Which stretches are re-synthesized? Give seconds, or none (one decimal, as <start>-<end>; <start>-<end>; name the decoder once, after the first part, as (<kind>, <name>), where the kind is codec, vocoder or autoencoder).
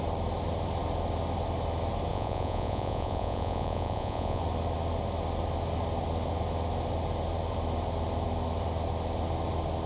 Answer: 2.1-4.4 (vocoder, Vocos)